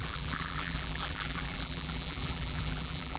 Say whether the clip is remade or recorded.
remade